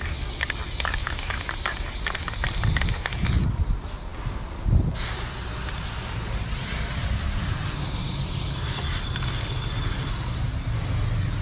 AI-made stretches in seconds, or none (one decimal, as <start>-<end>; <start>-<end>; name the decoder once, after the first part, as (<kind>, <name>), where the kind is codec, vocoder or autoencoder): 1.0-1.5 (autoencoder, DAC-VAE)